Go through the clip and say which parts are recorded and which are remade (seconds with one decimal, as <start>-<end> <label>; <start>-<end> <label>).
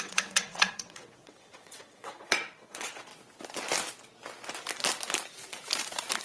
0.0-3.1 remade; 3.1-6.2 recorded